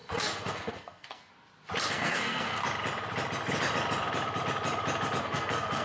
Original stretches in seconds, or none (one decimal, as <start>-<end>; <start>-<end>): 1.3-1.9; 2.6-5.2